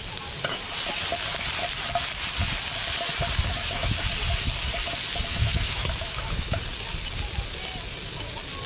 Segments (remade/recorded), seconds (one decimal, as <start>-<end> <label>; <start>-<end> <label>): 0.0-3.5 recorded; 3.5-4.0 remade; 4.0-5.3 recorded; 5.3-6.6 remade; 6.6-8.7 recorded